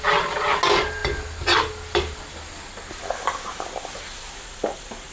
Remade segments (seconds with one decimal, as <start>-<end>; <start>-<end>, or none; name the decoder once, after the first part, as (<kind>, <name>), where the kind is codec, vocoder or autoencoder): none